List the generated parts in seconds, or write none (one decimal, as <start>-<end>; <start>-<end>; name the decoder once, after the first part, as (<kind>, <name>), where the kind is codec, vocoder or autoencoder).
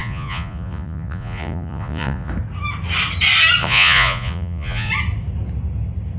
0.0-2.3 (vocoder, Vocos); 3.6-4.9